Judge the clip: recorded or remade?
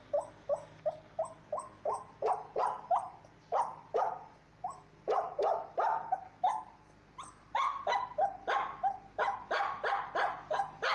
recorded